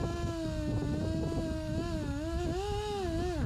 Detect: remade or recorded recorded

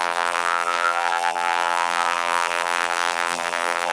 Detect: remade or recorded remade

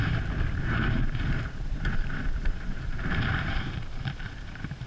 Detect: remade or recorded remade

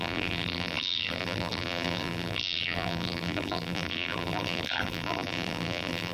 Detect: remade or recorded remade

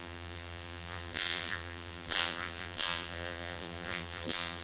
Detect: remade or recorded remade